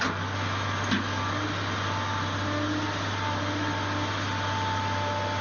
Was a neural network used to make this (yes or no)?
no